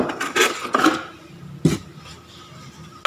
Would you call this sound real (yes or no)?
yes